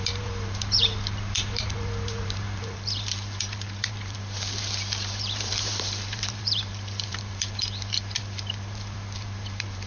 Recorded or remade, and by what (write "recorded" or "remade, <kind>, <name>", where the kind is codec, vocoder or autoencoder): remade, vocoder, BigVGAN v2